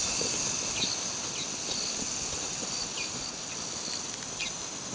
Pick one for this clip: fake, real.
real